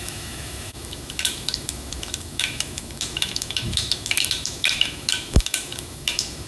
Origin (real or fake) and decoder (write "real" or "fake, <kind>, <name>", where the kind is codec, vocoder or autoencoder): fake, autoencoder, DAC-VAE